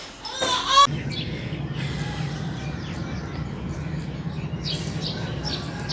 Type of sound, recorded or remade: recorded